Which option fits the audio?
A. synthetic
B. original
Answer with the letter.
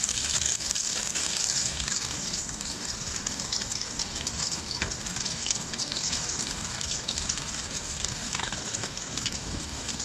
A